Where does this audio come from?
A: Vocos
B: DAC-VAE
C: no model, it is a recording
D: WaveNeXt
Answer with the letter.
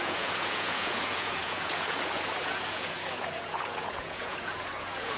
A